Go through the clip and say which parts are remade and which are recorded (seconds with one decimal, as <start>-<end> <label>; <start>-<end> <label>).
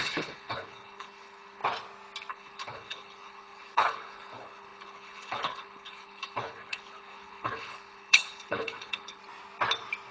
0.0-1.6 remade; 1.6-2.3 recorded; 2.3-9.2 remade; 9.2-10.1 recorded